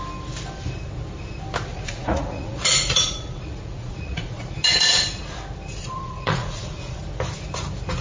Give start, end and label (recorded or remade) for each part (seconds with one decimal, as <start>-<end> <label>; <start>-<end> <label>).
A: 0.0-1.7 recorded; 1.7-4.5 remade; 4.5-5.8 recorded; 5.8-7.0 remade; 7.0-8.0 recorded